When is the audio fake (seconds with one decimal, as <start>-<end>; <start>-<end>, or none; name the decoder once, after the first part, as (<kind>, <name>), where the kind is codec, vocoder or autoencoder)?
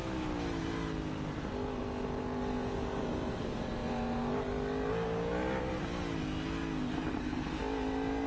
0.0-0.6 (autoencoder, DAC-VAE)